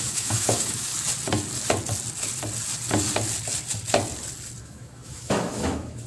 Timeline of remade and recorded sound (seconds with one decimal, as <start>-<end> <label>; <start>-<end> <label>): 0.0-0.9 remade; 0.9-4.6 recorded; 4.6-6.1 remade